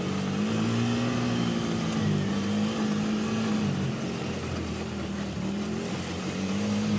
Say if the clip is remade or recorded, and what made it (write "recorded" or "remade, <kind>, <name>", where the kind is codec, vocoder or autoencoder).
recorded